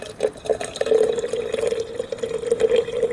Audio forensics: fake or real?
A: real